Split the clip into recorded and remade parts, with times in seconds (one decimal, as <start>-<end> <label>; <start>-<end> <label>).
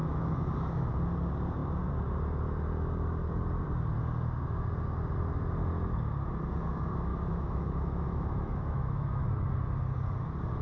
0.0-0.9 remade; 0.9-7.1 recorded; 7.1-9.3 remade; 9.3-10.6 recorded